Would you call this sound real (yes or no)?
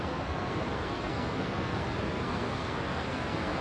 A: no